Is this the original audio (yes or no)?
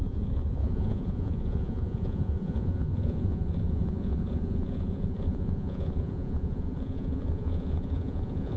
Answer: no